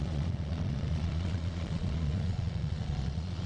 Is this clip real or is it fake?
fake